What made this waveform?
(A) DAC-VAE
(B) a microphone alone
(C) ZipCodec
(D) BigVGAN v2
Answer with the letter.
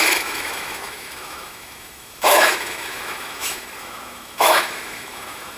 A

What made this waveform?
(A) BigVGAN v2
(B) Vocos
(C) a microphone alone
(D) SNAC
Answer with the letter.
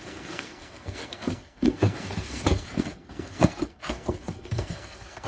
D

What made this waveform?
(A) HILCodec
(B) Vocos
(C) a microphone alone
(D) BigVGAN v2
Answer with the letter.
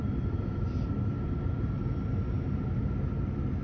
C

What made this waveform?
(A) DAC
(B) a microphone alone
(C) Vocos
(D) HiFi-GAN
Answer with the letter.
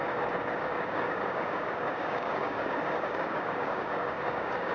A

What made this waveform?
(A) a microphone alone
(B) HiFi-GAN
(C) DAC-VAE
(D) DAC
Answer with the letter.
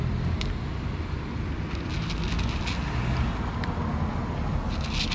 A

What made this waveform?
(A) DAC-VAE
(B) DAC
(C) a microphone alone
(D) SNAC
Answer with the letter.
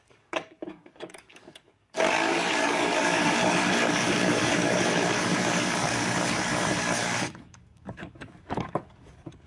B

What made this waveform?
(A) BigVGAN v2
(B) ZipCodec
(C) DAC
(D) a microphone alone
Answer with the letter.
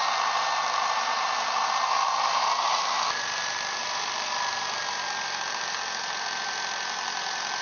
A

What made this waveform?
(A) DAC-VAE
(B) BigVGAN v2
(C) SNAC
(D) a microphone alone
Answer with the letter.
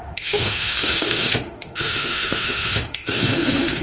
A